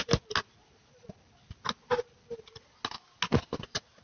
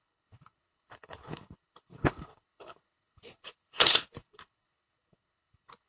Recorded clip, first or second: first